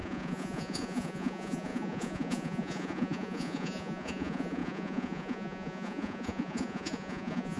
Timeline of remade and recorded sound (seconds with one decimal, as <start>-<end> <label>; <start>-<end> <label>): 0.0-7.6 remade

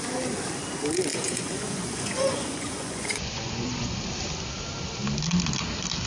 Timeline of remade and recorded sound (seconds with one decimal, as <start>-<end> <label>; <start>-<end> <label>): 0.0-1.1 recorded; 1.1-4.0 remade; 4.0-6.1 recorded